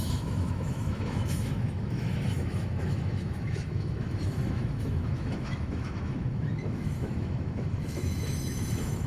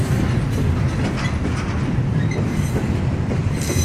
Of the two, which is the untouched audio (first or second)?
second